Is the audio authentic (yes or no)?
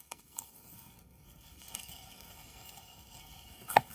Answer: no